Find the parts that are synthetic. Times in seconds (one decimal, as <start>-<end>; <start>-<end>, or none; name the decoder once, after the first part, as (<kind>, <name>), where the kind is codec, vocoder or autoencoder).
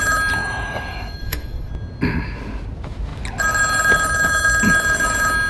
0.4-1.7 (autoencoder, DAC-VAE)